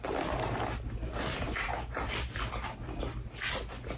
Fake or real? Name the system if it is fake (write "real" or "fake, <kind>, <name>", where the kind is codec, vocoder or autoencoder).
real